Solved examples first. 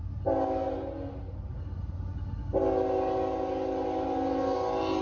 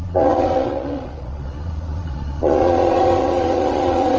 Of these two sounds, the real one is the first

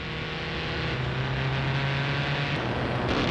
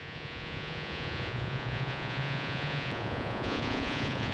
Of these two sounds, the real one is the first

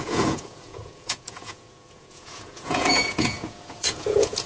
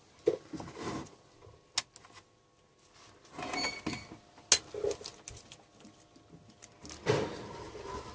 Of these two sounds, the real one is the second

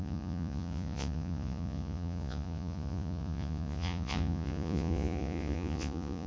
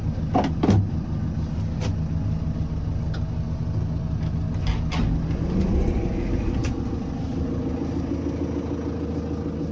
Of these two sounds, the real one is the second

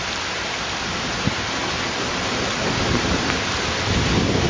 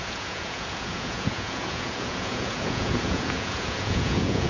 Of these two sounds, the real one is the first